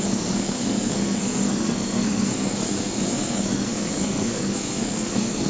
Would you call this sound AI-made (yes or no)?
yes